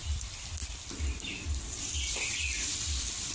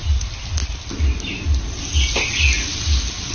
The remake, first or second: first